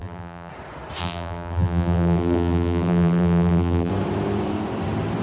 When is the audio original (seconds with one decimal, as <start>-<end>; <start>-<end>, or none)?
0.5-1.0; 3.9-5.2